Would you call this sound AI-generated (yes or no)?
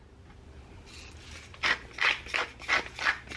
no